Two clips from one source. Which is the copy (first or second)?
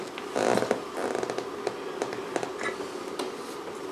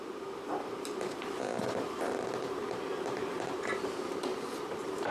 second